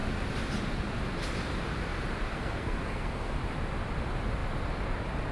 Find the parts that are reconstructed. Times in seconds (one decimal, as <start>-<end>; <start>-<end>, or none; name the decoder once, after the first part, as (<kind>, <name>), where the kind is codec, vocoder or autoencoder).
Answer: 2.3-3.4 (codec, SNAC)